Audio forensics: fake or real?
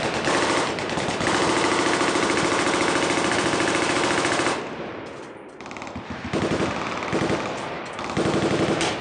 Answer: real